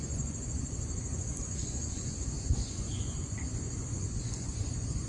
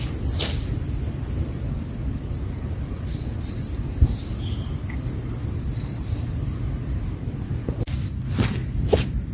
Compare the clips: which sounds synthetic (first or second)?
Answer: first